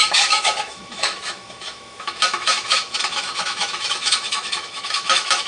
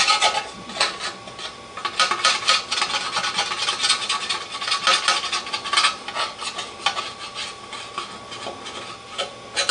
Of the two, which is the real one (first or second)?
second